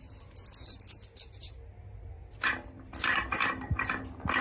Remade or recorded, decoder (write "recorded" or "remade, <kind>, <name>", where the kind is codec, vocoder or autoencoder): recorded